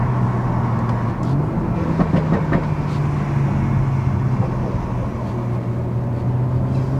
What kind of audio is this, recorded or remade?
recorded